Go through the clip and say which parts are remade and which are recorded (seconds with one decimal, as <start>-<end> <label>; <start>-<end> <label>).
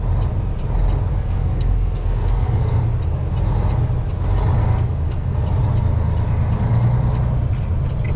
0.0-1.1 recorded; 1.1-2.8 remade; 2.8-4.6 recorded; 4.6-5.4 remade; 5.4-8.2 recorded